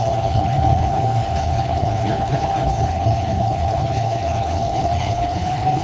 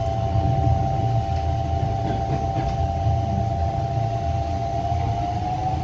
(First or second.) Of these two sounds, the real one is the second